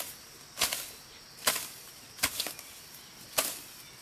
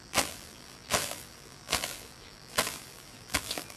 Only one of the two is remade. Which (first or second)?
second